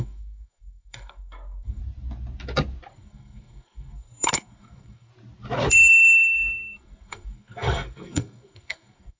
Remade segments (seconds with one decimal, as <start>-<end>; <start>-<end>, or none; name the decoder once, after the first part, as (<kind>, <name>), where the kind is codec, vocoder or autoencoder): 0.0-1.8 (codec, SNAC); 2.9-5.1; 5.7-9.2